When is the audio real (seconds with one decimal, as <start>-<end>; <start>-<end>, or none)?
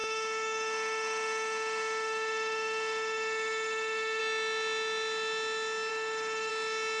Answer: 4.2-5.9; 6.5-7.0